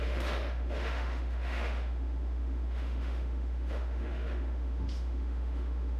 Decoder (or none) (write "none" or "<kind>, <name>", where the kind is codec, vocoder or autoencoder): autoencoder, DAC-VAE